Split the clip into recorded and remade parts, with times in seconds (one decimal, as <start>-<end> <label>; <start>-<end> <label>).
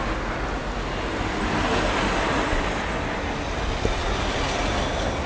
0.0-5.3 recorded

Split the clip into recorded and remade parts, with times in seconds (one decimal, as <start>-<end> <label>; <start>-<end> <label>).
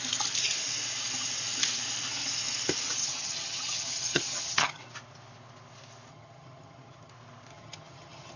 0.0-3.0 recorded; 3.0-4.8 remade; 4.8-6.1 recorded; 6.1-7.1 remade; 7.1-7.5 recorded; 7.5-8.4 remade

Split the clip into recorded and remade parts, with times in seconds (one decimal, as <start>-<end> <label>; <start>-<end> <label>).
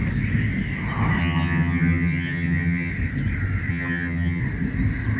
0.0-1.2 recorded; 1.2-2.9 remade; 2.9-3.7 recorded; 3.7-4.4 remade; 4.4-5.2 recorded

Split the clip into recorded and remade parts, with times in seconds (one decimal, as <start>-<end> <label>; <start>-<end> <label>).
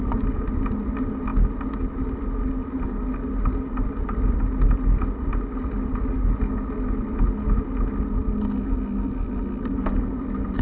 0.0-10.6 recorded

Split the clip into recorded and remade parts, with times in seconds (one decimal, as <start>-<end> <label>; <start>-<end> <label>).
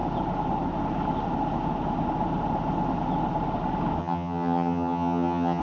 0.0-4.0 recorded; 4.0-5.6 remade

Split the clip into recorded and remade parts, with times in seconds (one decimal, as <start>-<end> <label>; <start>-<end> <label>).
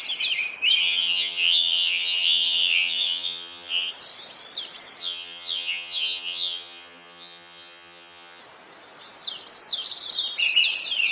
0.0-0.8 recorded; 0.8-3.9 remade; 3.9-5.0 recorded; 5.0-8.4 remade; 8.4-11.1 recorded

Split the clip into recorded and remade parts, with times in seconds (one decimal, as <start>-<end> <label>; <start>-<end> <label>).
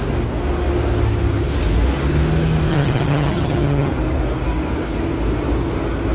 0.0-2.7 recorded; 2.7-3.9 remade; 3.9-6.1 recorded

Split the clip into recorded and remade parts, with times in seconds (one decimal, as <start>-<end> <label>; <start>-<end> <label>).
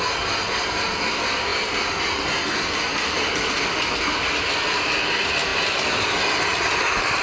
0.0-7.2 recorded